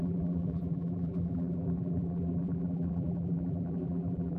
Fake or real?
fake